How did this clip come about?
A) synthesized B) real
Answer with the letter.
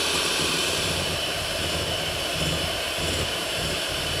A